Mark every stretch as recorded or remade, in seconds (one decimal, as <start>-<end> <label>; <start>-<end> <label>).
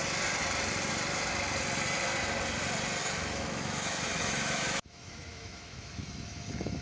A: 0.0-3.0 recorded; 3.0-6.8 remade